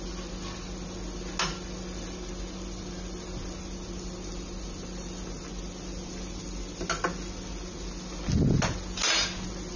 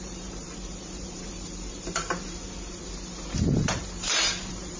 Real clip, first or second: first